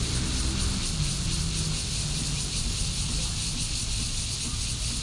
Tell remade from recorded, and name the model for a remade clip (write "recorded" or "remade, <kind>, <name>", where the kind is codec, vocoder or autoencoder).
recorded